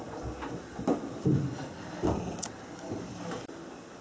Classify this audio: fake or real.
real